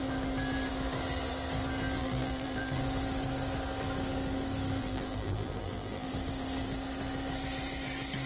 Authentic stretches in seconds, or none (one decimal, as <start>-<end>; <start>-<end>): 0.0-2.0; 2.8-4.8; 6.1-8.3